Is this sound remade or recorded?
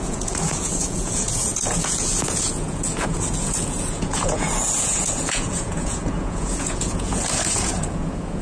remade